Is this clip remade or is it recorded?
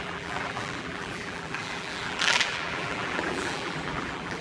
remade